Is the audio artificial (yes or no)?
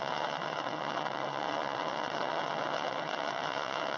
yes